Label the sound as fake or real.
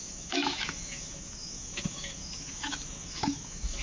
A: fake